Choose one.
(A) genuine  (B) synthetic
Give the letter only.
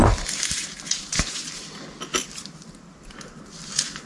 A